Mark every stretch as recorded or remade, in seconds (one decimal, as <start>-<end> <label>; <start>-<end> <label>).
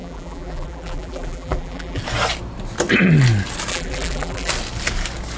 0.0-2.0 remade; 2.0-3.7 recorded; 3.7-4.5 remade; 4.5-5.4 recorded